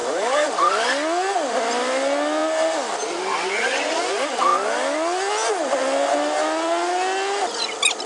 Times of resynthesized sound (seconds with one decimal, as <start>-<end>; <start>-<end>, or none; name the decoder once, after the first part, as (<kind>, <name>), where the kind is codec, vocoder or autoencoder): 0.0-0.5 (vocoder, BigVGAN v2)